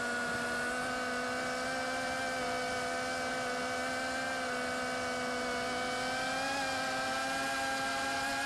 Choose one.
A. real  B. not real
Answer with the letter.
A